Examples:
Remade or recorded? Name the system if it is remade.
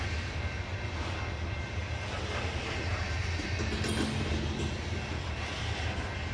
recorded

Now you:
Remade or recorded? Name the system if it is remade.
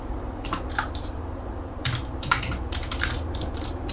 remade, vocoder, BigVGAN v2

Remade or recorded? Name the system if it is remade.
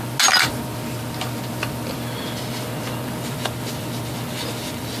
recorded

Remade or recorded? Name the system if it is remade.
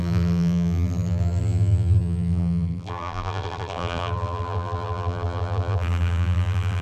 remade, vocoder, BigVGAN v2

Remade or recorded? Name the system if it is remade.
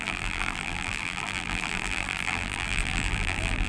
remade, vocoder, BigVGAN v2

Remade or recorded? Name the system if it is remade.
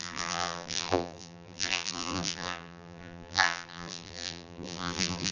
remade, vocoder, BigVGAN v2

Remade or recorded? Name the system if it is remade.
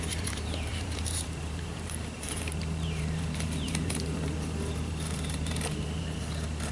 remade, vocoder, BigVGAN v2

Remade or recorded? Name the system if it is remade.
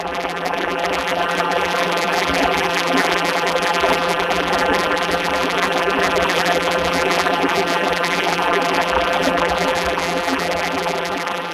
remade, vocoder, BigVGAN v2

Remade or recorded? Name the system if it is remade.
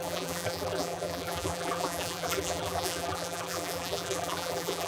remade, vocoder, BigVGAN v2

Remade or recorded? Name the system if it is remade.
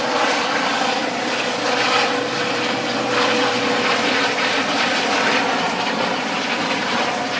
remade, vocoder, BigVGAN v2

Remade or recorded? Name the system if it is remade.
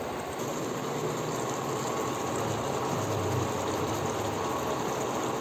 recorded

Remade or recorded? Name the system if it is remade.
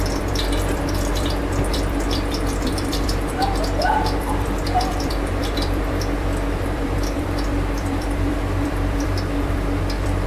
remade, vocoder, BigVGAN v2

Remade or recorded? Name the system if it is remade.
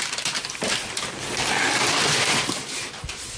remade, vocoder, BigVGAN v2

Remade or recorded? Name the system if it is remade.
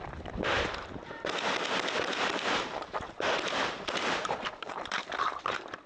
remade, vocoder, BigVGAN v2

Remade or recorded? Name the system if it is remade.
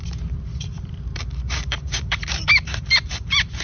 remade, vocoder, BigVGAN v2